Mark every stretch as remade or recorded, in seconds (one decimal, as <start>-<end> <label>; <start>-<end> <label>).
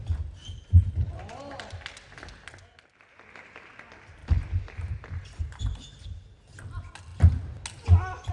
0.0-0.4 recorded; 0.4-1.8 remade; 1.8-4.2 recorded; 4.2-5.6 remade; 5.6-8.3 recorded